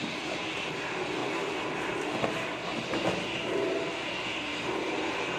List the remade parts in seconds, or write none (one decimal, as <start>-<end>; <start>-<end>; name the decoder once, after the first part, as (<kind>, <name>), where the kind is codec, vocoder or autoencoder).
none